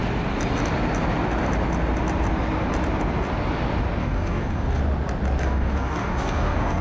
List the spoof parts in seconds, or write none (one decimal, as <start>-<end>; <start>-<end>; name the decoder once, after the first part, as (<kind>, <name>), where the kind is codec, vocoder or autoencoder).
4.0-4.8 (codec, DAC); 5.4-6.8